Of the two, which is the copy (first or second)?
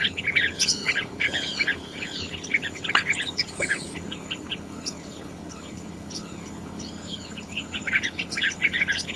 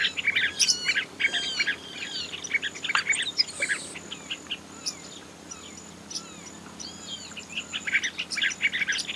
first